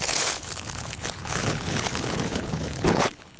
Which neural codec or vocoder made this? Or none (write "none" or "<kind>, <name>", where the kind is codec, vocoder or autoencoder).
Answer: codec, HILCodec